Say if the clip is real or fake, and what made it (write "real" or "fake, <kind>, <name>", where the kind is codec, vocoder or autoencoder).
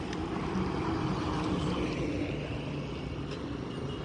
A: real